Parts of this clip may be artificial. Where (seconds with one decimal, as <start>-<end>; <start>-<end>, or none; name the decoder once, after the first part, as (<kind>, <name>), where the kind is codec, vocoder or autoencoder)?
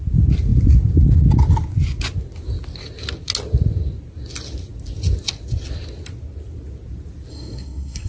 7.3-8.1 (codec, SNAC)